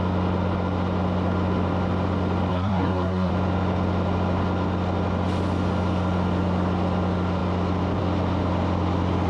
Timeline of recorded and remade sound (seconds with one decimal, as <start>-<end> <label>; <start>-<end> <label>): 0.0-2.5 recorded; 2.5-3.3 remade; 3.3-9.3 recorded